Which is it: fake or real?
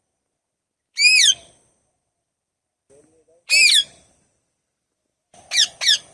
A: real